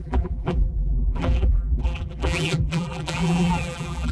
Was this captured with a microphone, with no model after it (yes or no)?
no